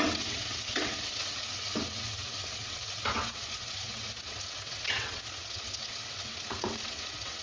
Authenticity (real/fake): fake